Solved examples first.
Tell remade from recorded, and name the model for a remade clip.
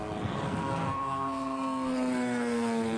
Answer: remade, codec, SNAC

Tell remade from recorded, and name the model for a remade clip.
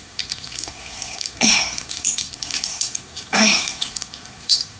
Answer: remade, codec, SNAC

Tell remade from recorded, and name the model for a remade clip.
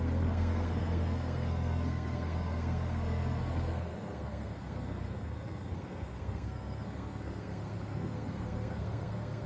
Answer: remade, codec, SNAC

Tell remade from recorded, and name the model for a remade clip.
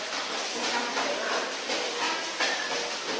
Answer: recorded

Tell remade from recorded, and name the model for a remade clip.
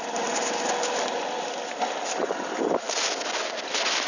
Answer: recorded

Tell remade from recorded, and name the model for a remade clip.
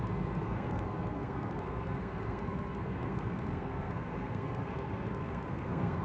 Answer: remade, codec, SNAC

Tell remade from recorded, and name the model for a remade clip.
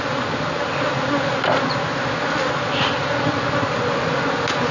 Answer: recorded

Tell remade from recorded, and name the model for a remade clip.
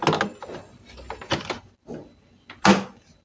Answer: recorded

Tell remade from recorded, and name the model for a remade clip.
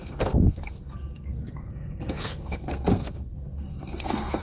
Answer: remade, codec, SNAC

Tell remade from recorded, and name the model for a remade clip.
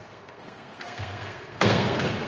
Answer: remade, codec, SNAC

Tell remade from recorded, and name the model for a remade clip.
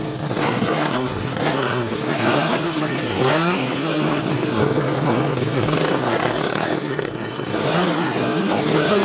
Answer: remade, codec, SNAC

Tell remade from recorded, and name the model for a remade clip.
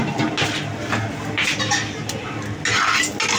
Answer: recorded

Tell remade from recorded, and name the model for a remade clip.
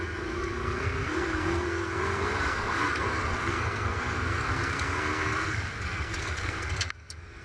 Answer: remade, codec, SNAC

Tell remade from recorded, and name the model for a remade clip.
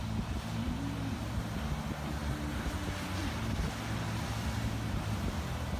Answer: recorded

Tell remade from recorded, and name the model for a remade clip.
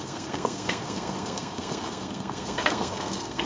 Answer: remade, codec, SNAC